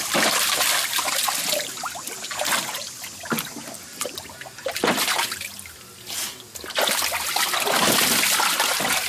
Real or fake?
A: real